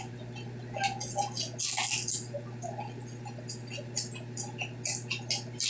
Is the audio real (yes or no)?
yes